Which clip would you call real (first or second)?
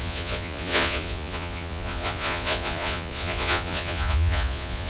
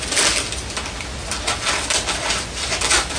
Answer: second